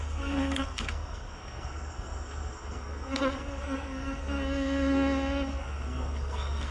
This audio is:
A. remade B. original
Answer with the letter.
A